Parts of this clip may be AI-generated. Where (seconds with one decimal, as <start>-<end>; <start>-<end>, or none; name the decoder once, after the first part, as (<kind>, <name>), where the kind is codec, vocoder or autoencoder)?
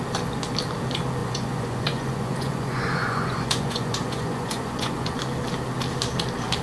1.2-5.2 (vocoder, Vocos)